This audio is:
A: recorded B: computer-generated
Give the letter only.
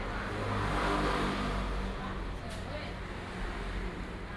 A